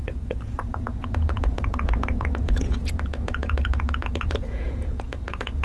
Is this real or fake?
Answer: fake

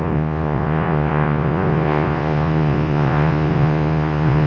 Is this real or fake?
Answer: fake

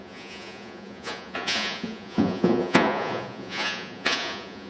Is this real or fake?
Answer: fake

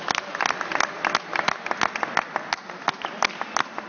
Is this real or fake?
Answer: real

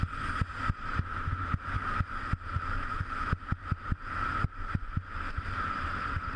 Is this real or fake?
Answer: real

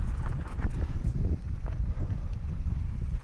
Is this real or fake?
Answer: fake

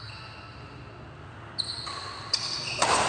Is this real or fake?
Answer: real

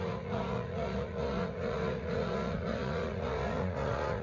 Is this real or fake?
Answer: fake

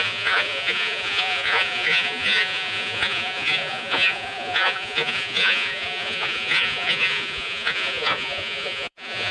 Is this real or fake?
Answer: fake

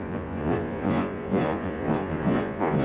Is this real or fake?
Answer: fake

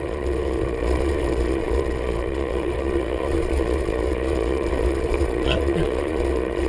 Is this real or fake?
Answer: fake